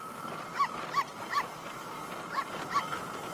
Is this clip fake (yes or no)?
no